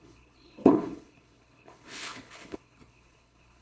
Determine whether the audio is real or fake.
fake